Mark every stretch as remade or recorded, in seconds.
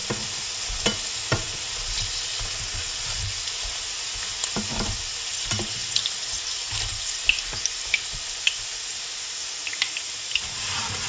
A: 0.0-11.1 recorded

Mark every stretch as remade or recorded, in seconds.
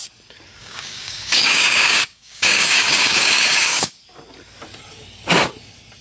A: 0.0-0.6 recorded; 0.6-4.0 remade; 4.0-6.0 recorded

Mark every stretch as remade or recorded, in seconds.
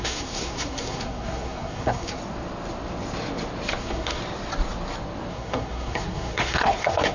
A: 0.0-2.2 remade; 2.2-3.8 recorded; 3.8-4.2 remade; 4.2-5.3 recorded; 5.3-7.1 remade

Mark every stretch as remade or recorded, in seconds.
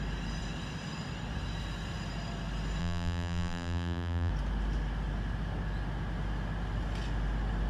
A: 0.0-2.8 recorded; 2.8-4.3 remade; 4.3-7.7 recorded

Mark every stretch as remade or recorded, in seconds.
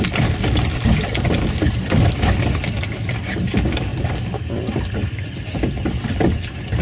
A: 0.0-6.8 recorded